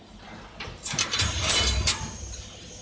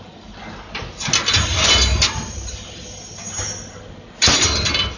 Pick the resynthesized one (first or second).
first